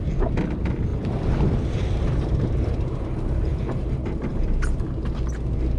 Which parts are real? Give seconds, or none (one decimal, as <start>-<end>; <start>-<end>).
0.0-0.9; 3.9-4.3; 5.1-5.8